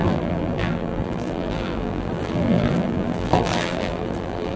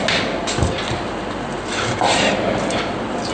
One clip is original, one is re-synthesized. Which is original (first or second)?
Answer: second